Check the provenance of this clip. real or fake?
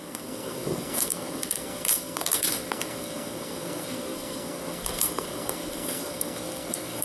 fake